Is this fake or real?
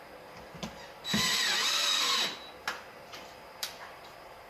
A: real